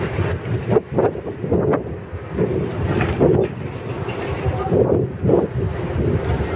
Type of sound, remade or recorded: recorded